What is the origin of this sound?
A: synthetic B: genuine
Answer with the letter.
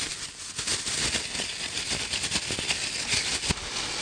B